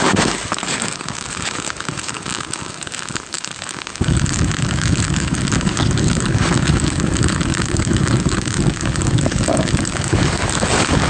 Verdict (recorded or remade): remade